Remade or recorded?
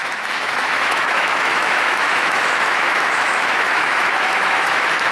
remade